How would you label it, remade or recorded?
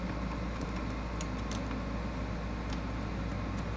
recorded